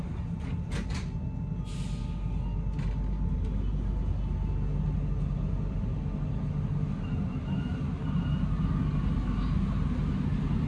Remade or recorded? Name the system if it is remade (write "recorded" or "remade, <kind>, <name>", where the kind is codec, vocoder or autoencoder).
recorded